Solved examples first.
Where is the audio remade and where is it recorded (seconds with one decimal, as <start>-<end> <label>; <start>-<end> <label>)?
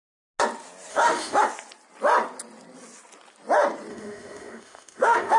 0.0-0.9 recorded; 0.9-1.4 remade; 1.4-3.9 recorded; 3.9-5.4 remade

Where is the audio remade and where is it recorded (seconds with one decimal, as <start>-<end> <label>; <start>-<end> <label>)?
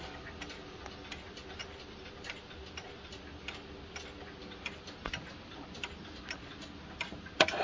0.0-7.6 recorded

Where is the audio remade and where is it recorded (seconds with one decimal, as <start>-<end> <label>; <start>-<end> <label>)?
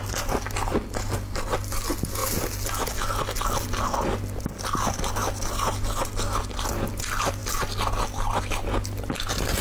0.0-9.6 recorded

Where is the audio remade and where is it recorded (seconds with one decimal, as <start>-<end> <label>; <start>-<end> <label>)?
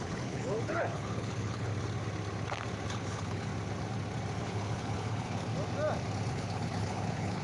0.0-1.7 remade; 1.7-2.9 recorded; 2.9-3.5 remade; 3.5-4.4 recorded; 4.4-5.5 remade; 5.5-6.3 recorded; 6.3-7.4 remade